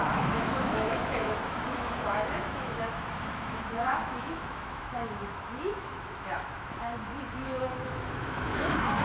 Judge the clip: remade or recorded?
remade